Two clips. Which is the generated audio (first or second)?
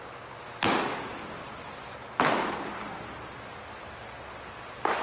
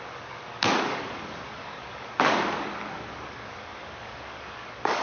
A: second